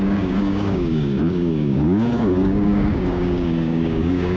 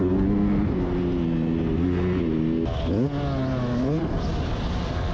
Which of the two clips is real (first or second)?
second